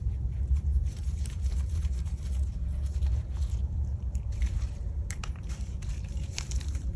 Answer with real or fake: fake